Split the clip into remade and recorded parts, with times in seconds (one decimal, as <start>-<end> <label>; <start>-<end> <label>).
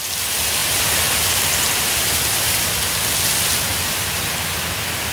0.0-0.6 recorded; 0.6-3.1 remade; 3.1-3.7 recorded; 3.7-4.3 remade; 4.3-5.1 recorded